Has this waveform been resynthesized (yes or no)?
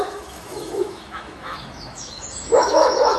yes